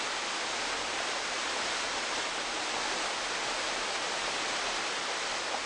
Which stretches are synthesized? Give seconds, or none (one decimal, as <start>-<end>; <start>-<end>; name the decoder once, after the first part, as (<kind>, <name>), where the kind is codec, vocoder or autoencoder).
none